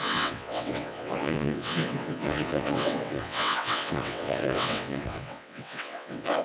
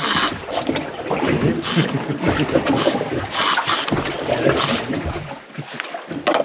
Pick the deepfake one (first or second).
first